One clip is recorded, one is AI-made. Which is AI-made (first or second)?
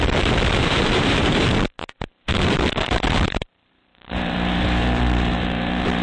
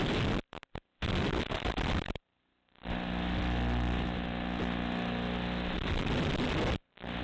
first